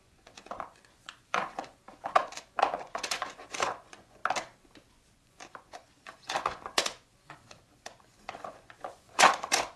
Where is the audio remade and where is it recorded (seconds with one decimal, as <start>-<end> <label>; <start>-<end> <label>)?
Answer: 0.0-4.2 remade; 4.2-4.9 recorded; 4.9-9.8 remade